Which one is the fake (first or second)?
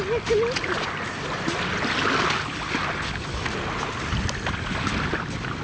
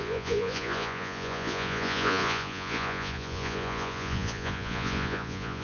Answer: second